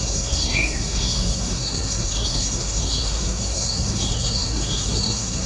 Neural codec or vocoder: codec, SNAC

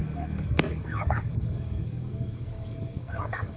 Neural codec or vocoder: codec, SNAC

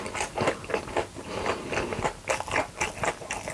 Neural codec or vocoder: none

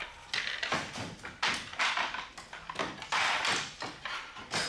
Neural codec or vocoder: none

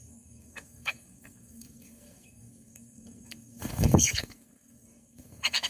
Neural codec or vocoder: codec, SNAC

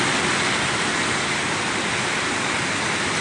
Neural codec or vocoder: none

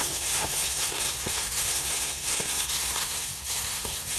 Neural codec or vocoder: codec, SNAC